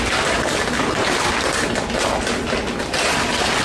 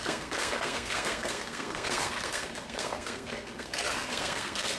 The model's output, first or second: second